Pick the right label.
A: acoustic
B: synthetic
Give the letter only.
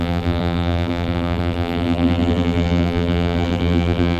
B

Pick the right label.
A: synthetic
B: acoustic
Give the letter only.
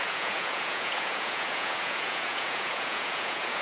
A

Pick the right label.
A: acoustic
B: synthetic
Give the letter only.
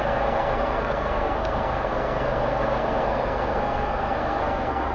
B